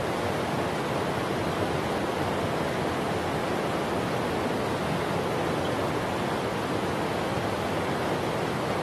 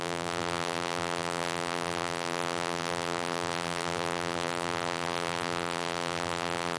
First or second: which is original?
first